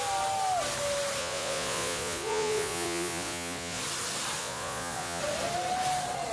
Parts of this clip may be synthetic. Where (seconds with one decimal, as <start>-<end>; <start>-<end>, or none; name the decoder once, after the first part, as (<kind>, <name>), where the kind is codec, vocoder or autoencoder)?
1.2-3.8 (vocoder, Vocos); 4.4-5.2